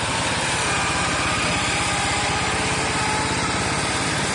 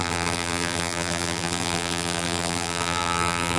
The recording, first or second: first